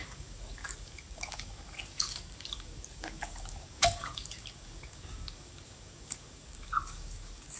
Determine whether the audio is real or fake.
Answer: fake